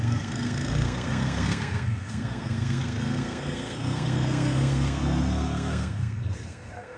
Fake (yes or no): yes